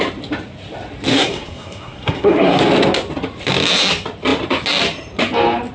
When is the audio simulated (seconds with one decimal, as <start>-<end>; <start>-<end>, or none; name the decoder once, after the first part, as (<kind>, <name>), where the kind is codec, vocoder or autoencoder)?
1.1-2.6 (codec, SNAC)